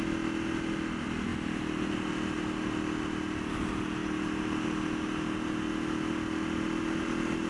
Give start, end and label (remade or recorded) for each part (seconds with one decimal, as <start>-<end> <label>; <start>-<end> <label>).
0.0-7.5 recorded